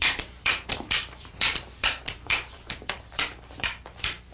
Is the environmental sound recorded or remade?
remade